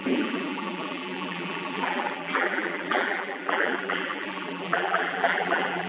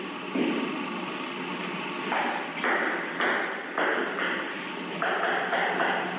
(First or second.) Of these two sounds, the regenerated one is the first